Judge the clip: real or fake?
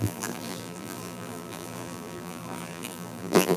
fake